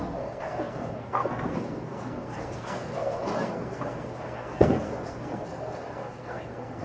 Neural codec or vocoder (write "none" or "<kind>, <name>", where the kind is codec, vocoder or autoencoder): codec, SNAC